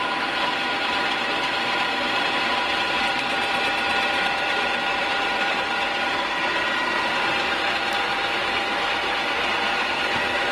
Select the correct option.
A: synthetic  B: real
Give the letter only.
A